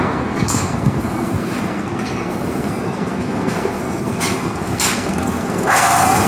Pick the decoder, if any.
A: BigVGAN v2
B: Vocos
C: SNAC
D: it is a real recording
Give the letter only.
C